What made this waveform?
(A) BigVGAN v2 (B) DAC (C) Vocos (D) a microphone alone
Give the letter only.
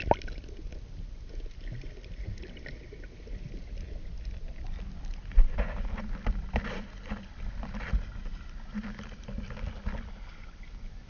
D